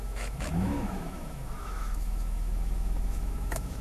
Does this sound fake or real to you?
fake